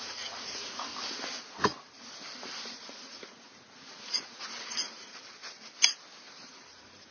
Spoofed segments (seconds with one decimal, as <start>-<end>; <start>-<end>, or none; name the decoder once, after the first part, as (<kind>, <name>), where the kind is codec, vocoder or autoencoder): 0.0-0.9 (vocoder, Vocos); 2.7-3.5; 4.0-5.1; 6.3-7.1